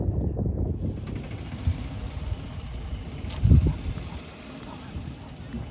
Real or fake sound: real